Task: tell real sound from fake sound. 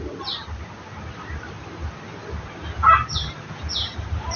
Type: real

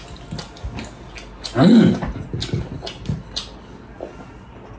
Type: real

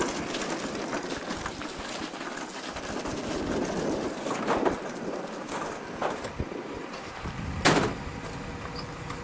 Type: real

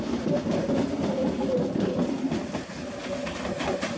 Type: real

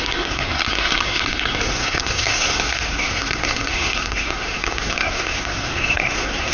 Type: fake